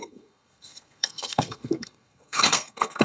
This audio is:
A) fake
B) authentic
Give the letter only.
A